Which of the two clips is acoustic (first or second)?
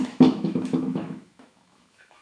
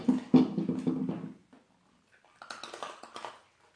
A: second